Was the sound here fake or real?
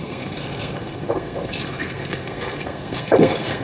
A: fake